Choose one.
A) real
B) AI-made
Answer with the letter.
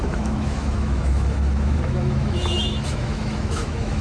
B